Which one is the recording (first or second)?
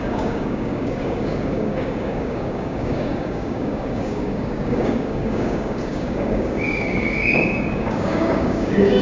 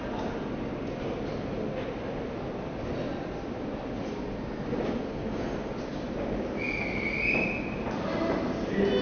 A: second